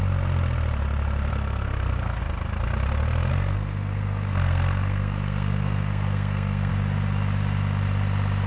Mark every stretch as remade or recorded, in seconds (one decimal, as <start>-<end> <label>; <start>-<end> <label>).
0.0-1.3 recorded; 1.3-2.2 remade; 2.2-3.3 recorded; 3.3-6.7 remade; 6.7-8.5 recorded